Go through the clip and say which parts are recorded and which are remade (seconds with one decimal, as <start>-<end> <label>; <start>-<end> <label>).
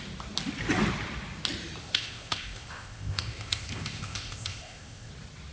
0.0-1.8 recorded; 1.8-5.1 remade; 5.1-5.5 recorded